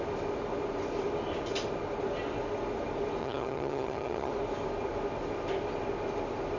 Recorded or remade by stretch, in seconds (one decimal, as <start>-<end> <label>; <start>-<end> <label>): 0.0-3.2 recorded; 3.2-4.3 remade; 4.3-6.6 recorded